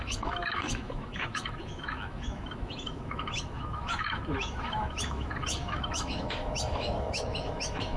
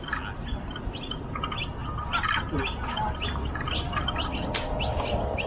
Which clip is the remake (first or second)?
first